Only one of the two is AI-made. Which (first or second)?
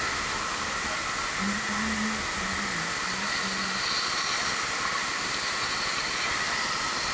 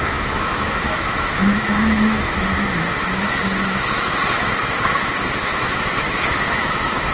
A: second